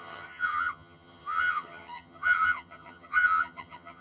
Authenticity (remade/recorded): remade